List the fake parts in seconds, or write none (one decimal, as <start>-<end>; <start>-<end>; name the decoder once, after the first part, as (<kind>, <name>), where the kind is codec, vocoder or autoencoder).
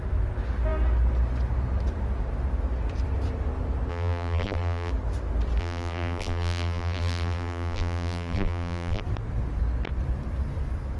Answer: 3.9-4.9 (vocoder, BigVGAN v2); 5.6-9.0